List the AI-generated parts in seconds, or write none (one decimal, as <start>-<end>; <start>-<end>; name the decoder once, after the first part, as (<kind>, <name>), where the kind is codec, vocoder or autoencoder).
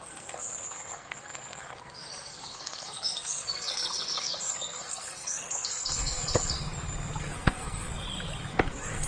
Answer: 0.0-6.7 (codec, SNAC); 7.2-7.9; 8.5-9.1